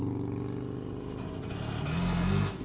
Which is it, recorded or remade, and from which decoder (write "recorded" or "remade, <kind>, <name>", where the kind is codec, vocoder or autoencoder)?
recorded